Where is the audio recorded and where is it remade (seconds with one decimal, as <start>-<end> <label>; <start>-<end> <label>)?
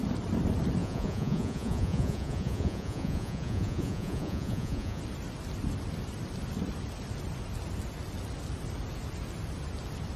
0.0-0.8 recorded; 0.8-5.0 remade; 5.0-10.2 recorded